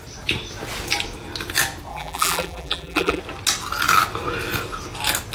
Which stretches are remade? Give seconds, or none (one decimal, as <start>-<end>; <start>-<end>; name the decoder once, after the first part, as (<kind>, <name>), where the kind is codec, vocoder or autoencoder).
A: 1.9-3.2 (vocoder, BigVGAN v2)